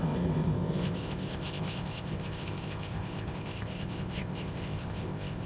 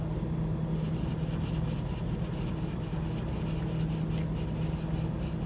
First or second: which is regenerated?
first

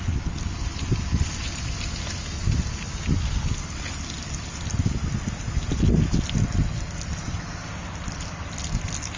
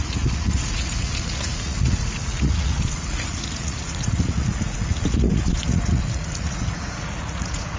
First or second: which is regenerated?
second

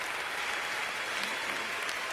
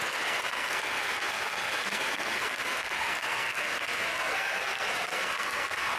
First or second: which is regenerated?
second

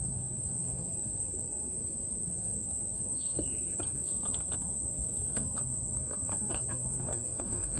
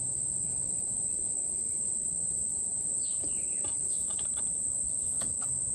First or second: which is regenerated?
first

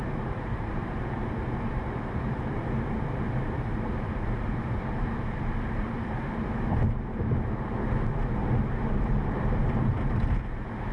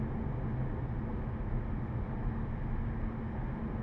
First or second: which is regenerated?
first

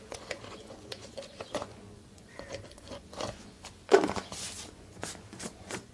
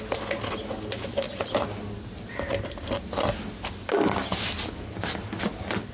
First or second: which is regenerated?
first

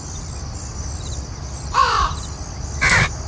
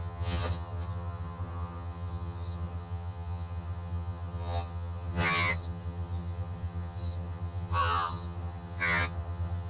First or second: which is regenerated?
second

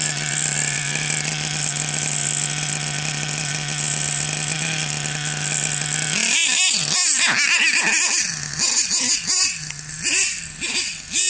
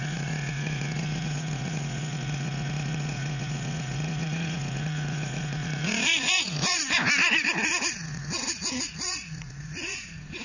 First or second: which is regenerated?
second